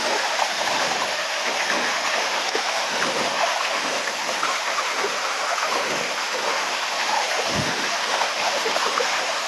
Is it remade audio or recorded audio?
remade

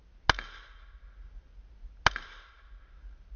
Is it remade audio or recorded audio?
recorded